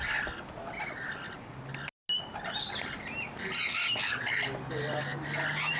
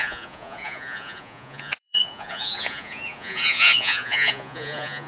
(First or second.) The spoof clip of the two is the second